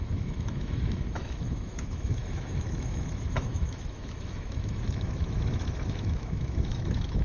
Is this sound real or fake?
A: fake